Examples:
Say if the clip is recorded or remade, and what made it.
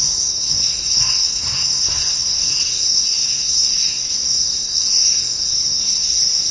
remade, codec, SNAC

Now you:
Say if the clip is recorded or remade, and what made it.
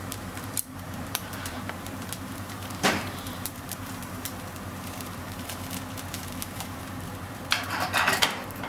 remade, vocoder, BigVGAN v2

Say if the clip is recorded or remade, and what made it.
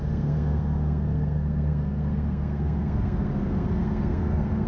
remade, codec, SNAC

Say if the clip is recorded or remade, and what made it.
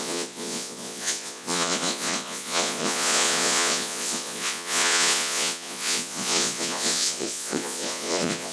remade, vocoder, Vocos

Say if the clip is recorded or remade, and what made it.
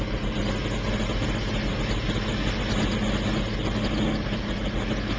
recorded